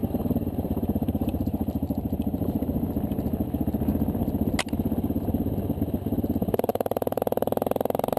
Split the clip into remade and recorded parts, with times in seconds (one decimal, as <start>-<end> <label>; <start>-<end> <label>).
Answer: 0.0-2.9 remade; 2.9-6.7 recorded; 6.7-7.2 remade; 7.2-8.2 recorded